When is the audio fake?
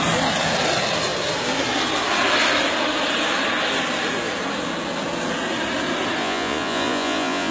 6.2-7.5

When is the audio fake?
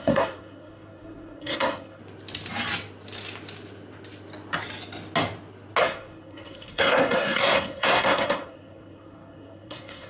0.0-2.0; 5.8-10.1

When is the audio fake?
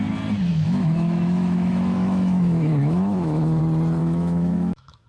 0.5-3.6; 4.0-5.1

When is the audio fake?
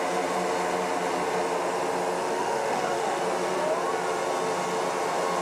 2.2-3.2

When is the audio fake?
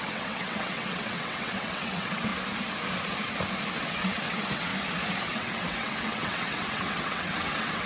0.0-2.3; 3.7-4.7; 5.2-7.9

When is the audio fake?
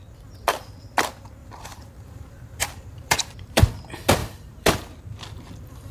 1.4-3.6; 4.2-5.2